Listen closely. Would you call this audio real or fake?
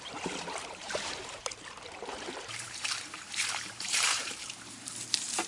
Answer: fake